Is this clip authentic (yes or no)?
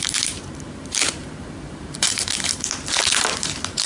no